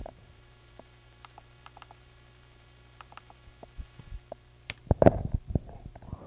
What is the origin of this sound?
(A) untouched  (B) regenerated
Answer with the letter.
B